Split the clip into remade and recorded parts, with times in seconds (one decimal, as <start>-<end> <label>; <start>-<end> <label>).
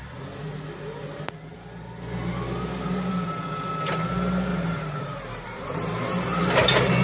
0.0-4.5 recorded; 4.5-6.4 remade; 6.4-7.0 recorded